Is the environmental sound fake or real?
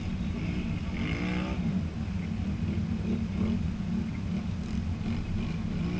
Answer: real